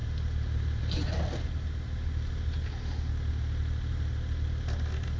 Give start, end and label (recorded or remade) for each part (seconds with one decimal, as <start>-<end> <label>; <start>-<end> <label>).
0.0-5.2 recorded